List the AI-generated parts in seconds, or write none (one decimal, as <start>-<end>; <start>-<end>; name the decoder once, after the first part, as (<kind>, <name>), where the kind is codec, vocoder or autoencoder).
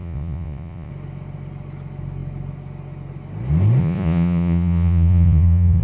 0.0-0.9 (vocoder, Vocos); 3.8-5.8